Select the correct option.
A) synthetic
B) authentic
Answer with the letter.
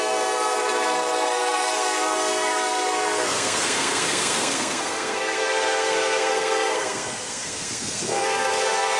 A